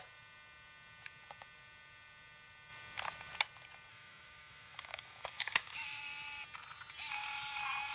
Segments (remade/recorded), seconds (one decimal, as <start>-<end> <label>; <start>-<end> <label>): 0.0-3.9 recorded; 3.9-6.0 remade; 6.0-7.9 recorded